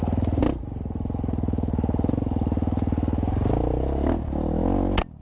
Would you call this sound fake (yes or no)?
no